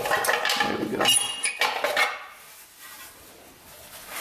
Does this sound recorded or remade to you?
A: recorded